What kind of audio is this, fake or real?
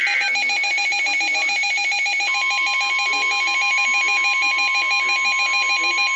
real